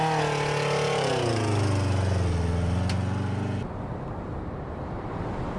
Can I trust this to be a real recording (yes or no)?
yes